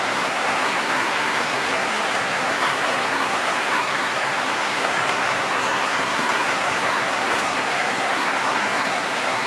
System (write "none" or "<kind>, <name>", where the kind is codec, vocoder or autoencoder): codec, SNAC